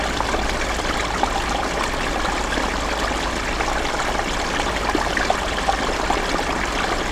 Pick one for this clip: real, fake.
real